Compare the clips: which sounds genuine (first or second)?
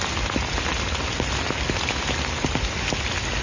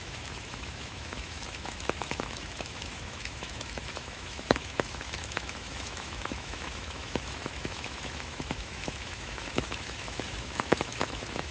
first